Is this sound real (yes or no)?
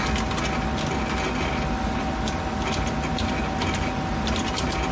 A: yes